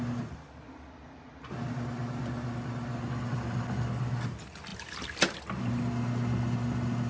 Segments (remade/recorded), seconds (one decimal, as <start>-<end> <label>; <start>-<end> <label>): 0.0-7.1 recorded